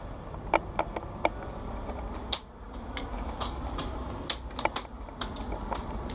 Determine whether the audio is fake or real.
real